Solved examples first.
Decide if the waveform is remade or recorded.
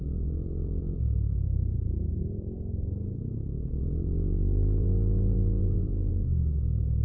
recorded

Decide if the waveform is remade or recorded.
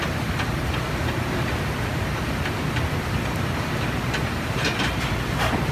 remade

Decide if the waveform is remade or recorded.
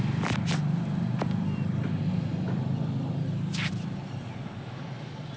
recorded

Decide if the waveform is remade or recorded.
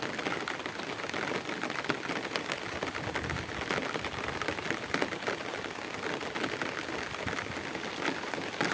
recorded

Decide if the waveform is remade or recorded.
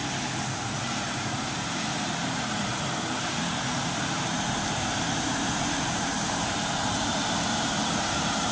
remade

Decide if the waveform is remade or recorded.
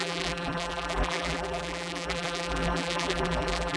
remade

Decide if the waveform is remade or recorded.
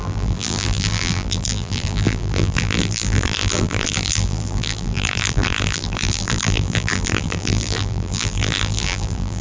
remade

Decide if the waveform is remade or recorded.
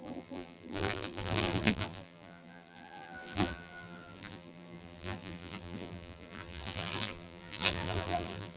remade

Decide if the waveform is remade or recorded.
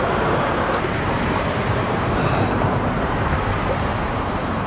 remade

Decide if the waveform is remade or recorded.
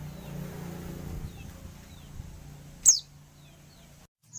recorded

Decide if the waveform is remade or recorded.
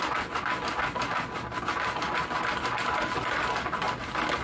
recorded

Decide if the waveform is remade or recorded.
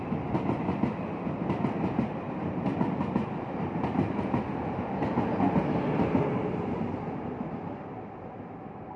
recorded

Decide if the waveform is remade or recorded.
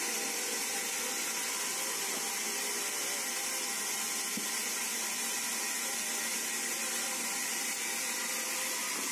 recorded